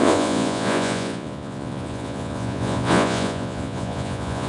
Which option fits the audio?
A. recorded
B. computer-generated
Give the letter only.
B